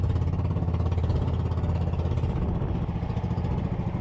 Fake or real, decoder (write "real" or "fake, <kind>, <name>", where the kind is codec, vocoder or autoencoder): real